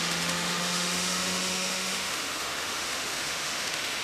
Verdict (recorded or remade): remade